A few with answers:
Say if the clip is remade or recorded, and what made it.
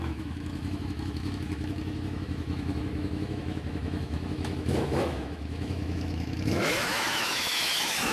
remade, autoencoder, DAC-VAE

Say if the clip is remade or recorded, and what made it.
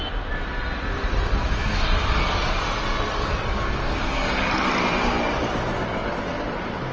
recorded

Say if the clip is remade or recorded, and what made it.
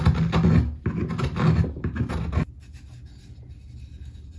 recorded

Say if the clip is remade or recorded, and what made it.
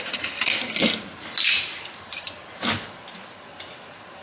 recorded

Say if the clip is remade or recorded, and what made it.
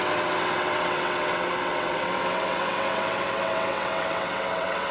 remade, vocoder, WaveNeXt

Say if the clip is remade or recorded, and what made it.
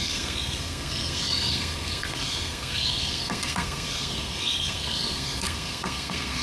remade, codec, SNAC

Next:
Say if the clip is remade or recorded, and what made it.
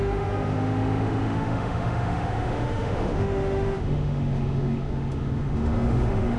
remade, autoencoder, DAC-VAE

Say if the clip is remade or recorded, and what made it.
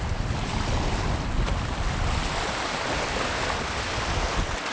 recorded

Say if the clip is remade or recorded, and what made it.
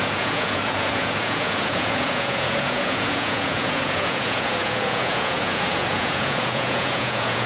remade, vocoder, Vocos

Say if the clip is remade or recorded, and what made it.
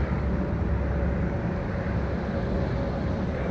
recorded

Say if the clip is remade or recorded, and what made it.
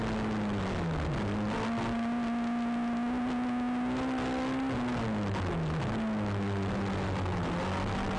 recorded